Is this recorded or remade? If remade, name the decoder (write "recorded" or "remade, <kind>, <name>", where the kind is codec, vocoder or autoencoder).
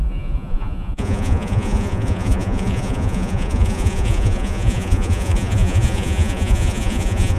remade, vocoder, Vocos